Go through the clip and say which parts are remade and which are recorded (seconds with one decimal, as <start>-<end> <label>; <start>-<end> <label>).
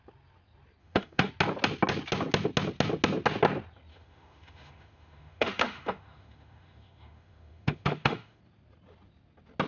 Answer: 0.0-0.8 recorded; 0.8-1.3 remade; 1.3-3.9 recorded; 3.9-8.4 remade; 8.4-9.7 recorded